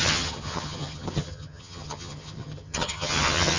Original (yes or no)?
no